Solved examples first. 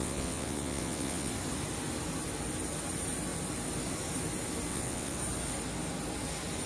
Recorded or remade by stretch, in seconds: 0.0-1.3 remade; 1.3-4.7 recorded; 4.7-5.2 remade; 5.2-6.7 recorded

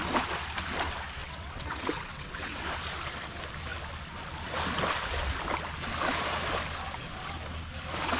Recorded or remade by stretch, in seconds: 0.0-1.2 recorded; 1.2-2.6 remade; 2.6-8.2 recorded

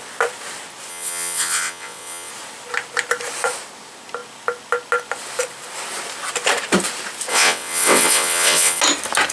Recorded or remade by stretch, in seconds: 0.0-0.9 recorded; 0.9-2.3 remade; 2.3-7.3 recorded; 7.3-8.8 remade; 8.8-9.3 recorded

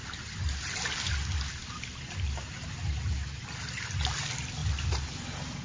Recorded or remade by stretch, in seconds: 0.0-5.6 recorded